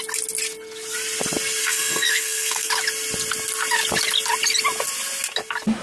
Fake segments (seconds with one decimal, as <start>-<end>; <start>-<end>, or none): 1.6-2.7